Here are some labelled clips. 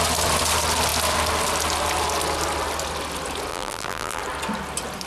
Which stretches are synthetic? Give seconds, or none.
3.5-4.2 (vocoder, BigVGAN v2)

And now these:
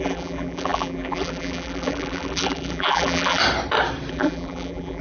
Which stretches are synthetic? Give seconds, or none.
0.0-3.4 (vocoder, BigVGAN v2); 4.1-5.0

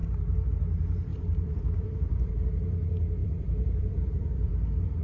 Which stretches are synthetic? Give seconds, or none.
1.1-2.3 (vocoder, BigVGAN v2); 3.2-4.5

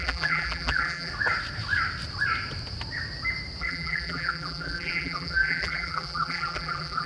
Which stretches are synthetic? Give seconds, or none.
0.0-1.1 (vocoder, BigVGAN v2); 3.6-7.1

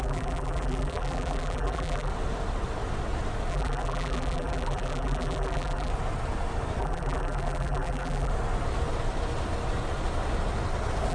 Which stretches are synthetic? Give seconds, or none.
0.0-2.1 (vocoder, BigVGAN v2); 3.5-5.9; 6.8-8.3

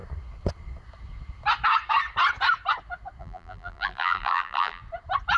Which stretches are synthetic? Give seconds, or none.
3.2-4.8 (vocoder, BigVGAN v2)

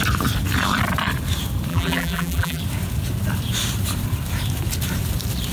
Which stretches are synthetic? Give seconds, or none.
1.7-2.6 (vocoder, BigVGAN v2)

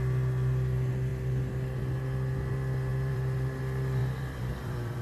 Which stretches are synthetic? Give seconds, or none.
2.9-3.6 (vocoder, BigVGAN v2); 4.0-5.0